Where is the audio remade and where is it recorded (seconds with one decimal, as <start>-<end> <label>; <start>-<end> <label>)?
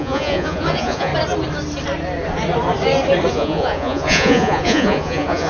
0.0-1.1 remade; 1.1-3.3 recorded; 3.3-5.5 remade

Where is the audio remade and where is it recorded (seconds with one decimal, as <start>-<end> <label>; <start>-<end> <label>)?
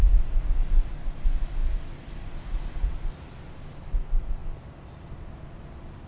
0.0-6.1 recorded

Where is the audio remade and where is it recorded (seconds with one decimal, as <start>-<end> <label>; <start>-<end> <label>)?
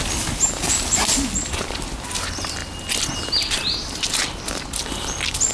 0.0-5.5 recorded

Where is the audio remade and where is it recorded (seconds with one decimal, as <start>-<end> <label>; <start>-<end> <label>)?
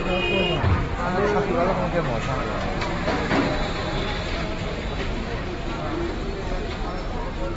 0.0-7.6 recorded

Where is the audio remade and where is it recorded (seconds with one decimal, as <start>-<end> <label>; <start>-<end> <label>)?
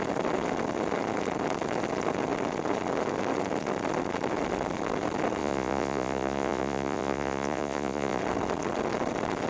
0.0-5.4 recorded; 5.4-8.2 remade; 8.2-9.5 recorded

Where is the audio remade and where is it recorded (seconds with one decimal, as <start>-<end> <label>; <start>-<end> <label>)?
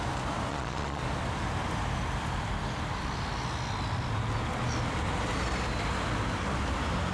0.0-0.5 recorded; 0.5-1.0 remade; 1.0-7.1 recorded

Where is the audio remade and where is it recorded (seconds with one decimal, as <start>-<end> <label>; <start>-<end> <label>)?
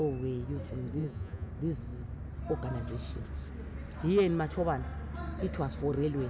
0.0-1.0 recorded; 1.0-1.5 remade; 1.5-6.3 recorded